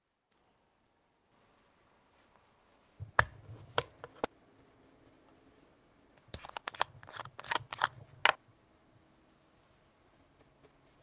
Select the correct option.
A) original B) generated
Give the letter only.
A